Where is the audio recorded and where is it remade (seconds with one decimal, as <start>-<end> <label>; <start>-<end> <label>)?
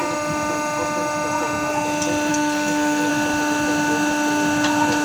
0.0-2.3 recorded; 2.3-3.1 remade; 3.1-5.0 recorded